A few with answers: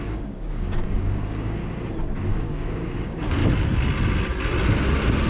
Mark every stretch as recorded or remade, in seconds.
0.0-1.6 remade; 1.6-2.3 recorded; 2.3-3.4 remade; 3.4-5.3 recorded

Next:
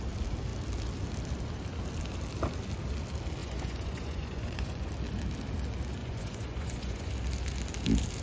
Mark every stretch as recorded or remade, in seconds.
0.0-3.4 recorded; 3.4-4.9 remade; 4.9-6.0 recorded; 6.0-7.1 remade; 7.1-8.2 recorded

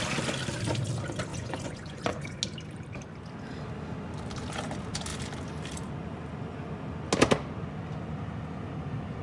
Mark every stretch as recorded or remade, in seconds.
0.0-1.3 recorded; 1.3-2.4 remade; 2.4-9.2 recorded

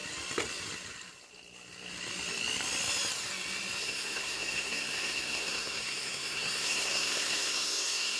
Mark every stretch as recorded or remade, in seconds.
0.0-3.8 recorded; 3.8-8.2 remade